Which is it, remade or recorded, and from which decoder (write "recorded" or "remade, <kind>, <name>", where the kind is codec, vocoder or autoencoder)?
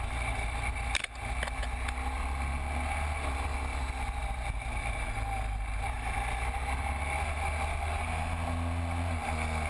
recorded